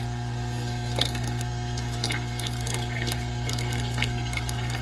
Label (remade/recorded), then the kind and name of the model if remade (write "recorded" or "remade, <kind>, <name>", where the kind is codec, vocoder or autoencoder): remade, codec, SNAC